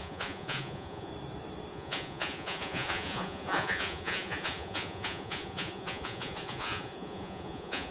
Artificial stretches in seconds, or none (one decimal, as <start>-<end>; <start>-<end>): 0.0-1.1; 1.7-7.9